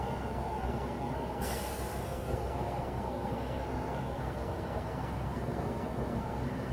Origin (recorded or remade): remade